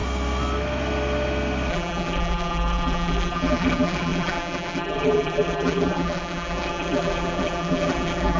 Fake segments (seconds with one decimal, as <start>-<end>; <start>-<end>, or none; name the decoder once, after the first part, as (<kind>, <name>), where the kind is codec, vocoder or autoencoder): 1.7-8.4 (vocoder, BigVGAN v2)